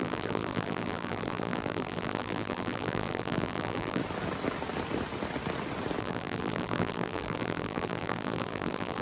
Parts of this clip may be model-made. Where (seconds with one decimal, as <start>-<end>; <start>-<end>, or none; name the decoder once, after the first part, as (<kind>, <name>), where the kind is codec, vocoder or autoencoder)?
0.0-4.0 (vocoder, BigVGAN v2); 6.0-9.0